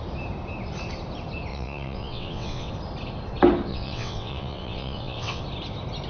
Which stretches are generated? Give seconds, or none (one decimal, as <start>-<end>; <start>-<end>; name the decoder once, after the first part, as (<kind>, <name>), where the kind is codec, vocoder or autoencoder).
1.5-2.7 (vocoder, WaveNeXt); 3.7-5.4